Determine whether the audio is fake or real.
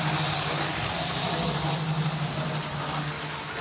real